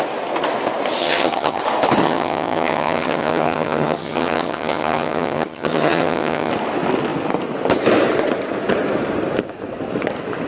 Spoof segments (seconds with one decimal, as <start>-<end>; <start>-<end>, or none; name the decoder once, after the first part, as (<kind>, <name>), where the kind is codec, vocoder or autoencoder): 1.0-1.6 (vocoder, HiFi-GAN); 2.0-6.5